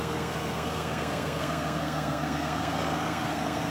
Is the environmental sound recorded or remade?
remade